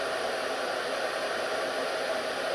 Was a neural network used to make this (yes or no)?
no